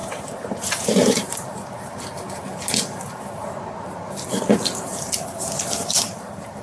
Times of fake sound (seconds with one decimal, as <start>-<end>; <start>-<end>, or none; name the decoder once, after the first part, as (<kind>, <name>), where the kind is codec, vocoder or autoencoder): 0.0-2.0 (vocoder, BigVGAN v2); 4.9-6.6